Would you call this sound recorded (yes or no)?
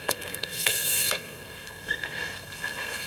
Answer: no